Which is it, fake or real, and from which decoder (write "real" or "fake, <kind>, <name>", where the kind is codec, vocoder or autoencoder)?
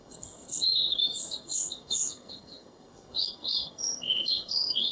fake, codec, SNAC